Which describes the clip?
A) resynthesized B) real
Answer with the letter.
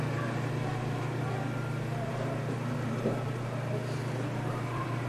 A